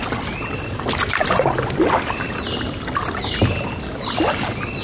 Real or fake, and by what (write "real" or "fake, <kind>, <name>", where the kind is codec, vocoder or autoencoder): real